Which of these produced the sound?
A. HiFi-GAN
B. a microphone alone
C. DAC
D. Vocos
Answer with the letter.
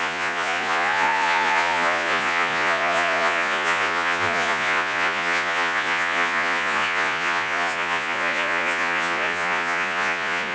D